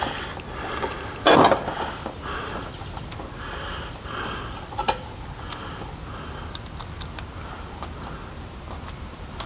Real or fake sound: real